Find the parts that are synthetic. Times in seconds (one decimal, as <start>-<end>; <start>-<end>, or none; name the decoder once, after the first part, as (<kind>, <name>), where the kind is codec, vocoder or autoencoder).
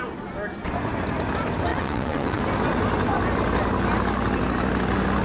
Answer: 1.7-2.4 (vocoder, WaveNeXt)